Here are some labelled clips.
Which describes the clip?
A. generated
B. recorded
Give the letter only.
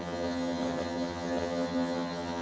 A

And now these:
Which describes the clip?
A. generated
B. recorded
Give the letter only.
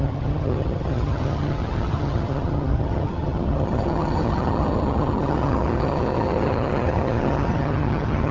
A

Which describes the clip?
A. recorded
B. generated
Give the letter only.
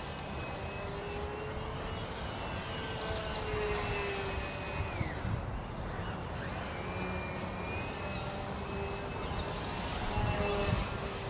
A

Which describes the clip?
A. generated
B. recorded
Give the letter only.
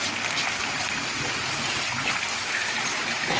B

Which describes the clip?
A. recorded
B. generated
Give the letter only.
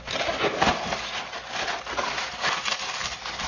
A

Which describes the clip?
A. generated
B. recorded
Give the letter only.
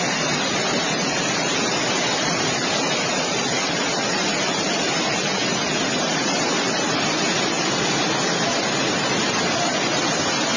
B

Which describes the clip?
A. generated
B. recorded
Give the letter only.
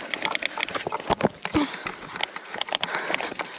B